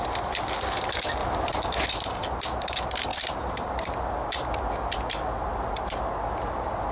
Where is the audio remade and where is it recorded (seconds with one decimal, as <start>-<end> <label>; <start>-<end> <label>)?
0.0-3.1 recorded; 3.1-3.7 remade; 3.7-6.9 recorded